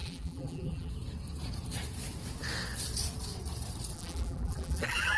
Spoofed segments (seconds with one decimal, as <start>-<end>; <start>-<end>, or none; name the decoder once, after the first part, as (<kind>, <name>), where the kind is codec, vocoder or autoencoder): 0.0-0.9 (vocoder, BigVGAN v2); 3.9-5.2

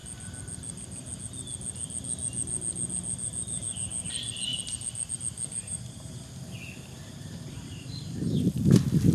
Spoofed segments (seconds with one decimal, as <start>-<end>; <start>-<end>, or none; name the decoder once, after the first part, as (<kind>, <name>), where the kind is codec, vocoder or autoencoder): 5.6-6.1 (vocoder, BigVGAN v2)

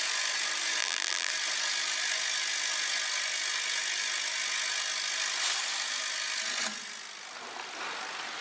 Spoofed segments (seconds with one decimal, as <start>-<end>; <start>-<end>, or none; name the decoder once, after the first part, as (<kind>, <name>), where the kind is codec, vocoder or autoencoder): 0.8-1.3 (vocoder, BigVGAN v2)

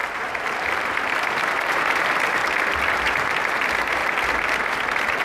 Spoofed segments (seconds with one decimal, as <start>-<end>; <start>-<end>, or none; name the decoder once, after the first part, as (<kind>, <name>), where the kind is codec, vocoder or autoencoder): 0.0-2.4 (vocoder, BigVGAN v2); 3.0-4.0; 4.6-5.2

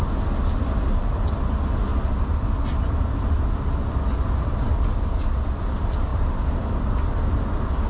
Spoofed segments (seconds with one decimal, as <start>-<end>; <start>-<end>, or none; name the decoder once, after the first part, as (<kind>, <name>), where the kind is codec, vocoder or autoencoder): 6.1-7.4 (vocoder, BigVGAN v2)

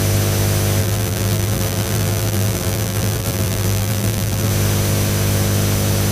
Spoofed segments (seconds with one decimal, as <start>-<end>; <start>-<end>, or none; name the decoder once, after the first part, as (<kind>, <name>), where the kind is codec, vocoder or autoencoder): 0.8-4.5 (vocoder, BigVGAN v2)